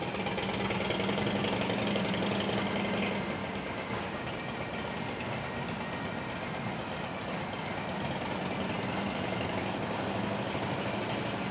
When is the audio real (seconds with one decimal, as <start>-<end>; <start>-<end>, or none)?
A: 0.0-3.4; 4.4-11.5